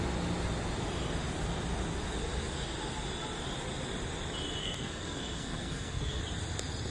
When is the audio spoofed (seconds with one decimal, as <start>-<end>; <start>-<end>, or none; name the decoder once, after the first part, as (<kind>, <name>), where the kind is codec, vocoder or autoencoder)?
4.6-6.2 (codec, SNAC)

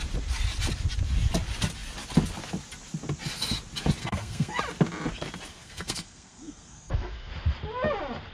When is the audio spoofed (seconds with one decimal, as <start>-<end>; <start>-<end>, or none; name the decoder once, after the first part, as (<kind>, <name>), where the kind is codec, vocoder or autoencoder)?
4.0-4.6 (codec, SNAC); 5.5-7.3